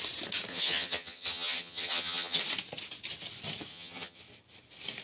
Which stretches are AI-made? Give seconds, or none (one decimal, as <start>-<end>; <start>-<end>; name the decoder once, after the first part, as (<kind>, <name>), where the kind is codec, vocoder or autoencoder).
0.5-2.4 (vocoder, HiFi-GAN); 3.7-4.2